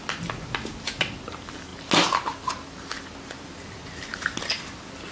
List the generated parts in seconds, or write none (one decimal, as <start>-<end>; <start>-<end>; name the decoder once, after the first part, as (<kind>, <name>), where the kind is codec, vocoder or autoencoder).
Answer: none